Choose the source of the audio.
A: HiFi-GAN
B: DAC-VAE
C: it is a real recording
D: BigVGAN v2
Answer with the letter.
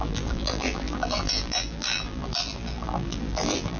D